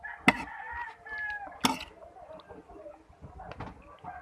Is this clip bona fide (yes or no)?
yes